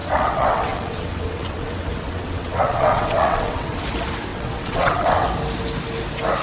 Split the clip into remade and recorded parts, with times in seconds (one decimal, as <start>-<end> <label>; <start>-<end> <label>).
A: 0.0-3.8 remade; 3.8-4.3 recorded; 4.3-5.3 remade; 5.3-6.4 recorded